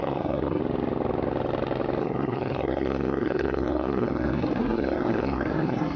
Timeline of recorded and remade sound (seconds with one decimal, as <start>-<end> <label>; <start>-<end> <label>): 0.0-0.6 remade; 0.6-2.0 recorded; 2.0-6.0 remade

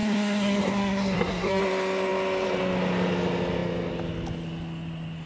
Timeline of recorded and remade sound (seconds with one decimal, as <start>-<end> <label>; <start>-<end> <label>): 0.0-1.6 remade; 1.6-5.3 recorded

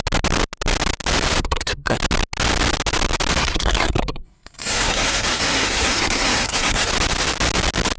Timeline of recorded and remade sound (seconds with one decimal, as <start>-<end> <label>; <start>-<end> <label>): 0.0-1.4 recorded; 1.4-2.0 remade; 2.0-3.4 recorded; 3.4-6.9 remade; 6.9-8.0 recorded